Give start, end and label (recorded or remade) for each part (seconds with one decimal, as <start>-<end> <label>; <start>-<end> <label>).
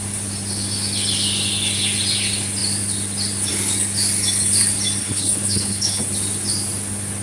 0.0-5.0 recorded; 5.0-6.0 remade; 6.0-7.2 recorded